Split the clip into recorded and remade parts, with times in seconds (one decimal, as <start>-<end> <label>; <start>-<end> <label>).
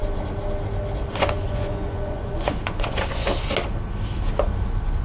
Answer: 0.0-1.1 recorded; 1.1-3.3 remade; 3.3-5.0 recorded